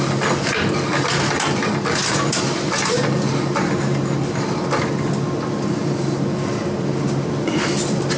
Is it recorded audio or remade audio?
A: recorded